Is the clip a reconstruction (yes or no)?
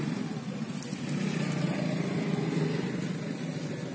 no